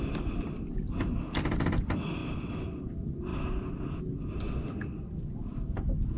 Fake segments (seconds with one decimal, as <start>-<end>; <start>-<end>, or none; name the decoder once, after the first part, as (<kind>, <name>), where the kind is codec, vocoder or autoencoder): none